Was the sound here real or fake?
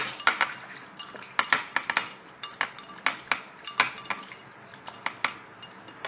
real